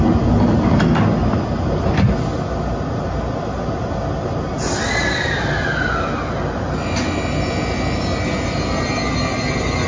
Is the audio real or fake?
real